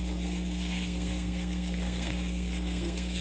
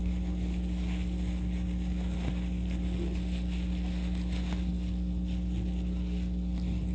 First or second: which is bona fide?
second